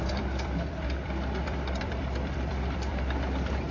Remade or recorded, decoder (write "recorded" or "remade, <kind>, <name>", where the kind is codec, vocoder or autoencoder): remade, vocoder, BigVGAN v2